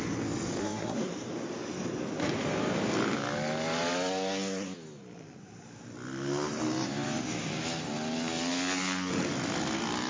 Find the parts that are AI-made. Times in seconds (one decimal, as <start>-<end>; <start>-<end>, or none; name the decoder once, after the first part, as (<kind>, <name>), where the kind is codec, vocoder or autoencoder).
0.6-1.1 (codec, SNAC)